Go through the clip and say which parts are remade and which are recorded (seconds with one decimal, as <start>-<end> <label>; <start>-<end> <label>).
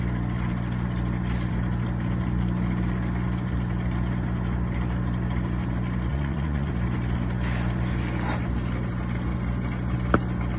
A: 0.0-6.1 recorded; 6.1-6.7 remade; 6.7-10.6 recorded